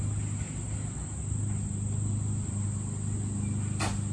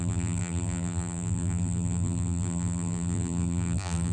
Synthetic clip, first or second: second